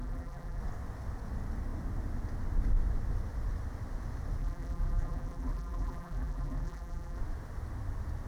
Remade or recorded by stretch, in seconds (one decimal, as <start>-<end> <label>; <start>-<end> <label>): 0.0-0.6 remade; 0.6-4.4 recorded; 4.4-7.2 remade; 7.2-8.3 recorded